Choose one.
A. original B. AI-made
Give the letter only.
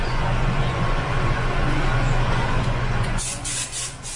B